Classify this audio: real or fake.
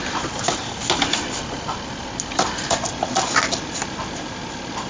real